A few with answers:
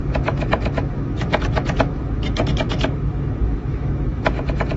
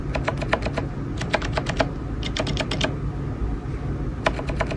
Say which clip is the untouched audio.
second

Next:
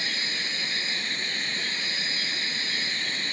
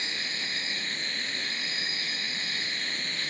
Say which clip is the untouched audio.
first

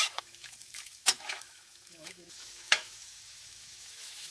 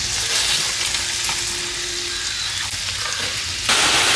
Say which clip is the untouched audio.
second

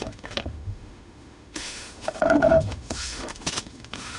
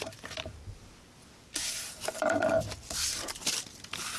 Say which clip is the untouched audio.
second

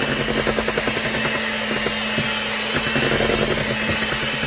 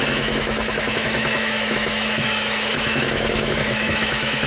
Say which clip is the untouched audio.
first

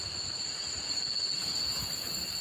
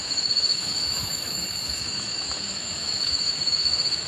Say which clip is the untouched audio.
first